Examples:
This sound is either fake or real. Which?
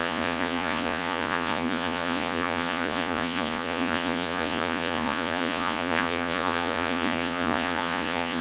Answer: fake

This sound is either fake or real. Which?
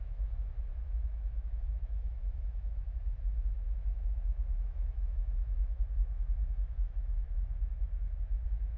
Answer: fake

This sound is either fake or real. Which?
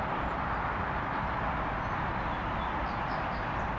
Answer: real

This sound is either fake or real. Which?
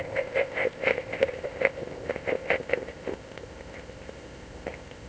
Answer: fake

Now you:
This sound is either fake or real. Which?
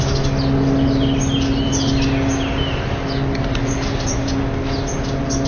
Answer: real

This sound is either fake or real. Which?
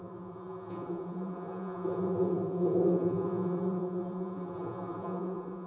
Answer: fake